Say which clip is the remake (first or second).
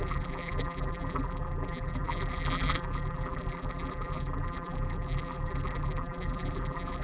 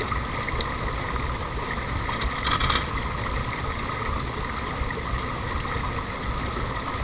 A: first